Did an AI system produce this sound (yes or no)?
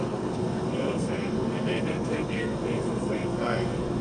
yes